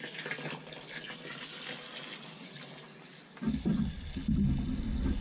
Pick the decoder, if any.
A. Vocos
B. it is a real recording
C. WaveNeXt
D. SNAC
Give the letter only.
B